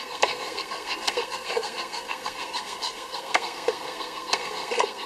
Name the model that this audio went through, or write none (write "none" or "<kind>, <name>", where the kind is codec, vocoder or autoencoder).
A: codec, SNAC